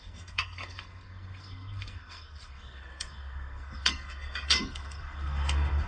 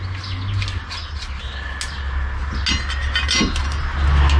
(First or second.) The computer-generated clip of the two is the first